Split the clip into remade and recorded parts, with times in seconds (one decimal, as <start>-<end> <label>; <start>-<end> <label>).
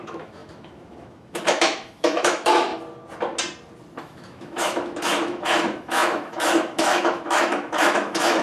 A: 0.0-2.7 remade; 2.7-4.0 recorded; 4.0-8.4 remade